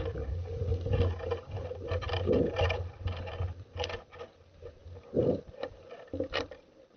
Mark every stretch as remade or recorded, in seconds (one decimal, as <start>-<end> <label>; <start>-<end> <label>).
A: 0.0-7.0 recorded